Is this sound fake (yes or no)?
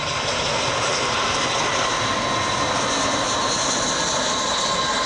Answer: no